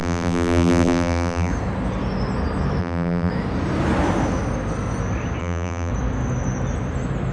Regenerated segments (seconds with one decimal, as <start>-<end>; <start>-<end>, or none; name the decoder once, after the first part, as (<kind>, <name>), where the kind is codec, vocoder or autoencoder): 0.0-1.5 (vocoder, BigVGAN v2); 2.8-3.3; 5.4-5.9

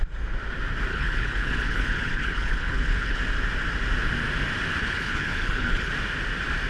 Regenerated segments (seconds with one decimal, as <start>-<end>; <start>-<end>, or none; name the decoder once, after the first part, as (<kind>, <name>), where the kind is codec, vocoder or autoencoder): 0.9-3.2 (codec, HILCodec); 4.8-5.9

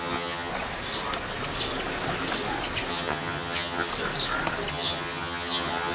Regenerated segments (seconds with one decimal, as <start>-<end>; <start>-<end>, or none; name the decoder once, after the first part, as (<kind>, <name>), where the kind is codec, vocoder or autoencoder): 0.0-0.5 (vocoder, HiFi-GAN); 2.9-3.9; 4.7-5.9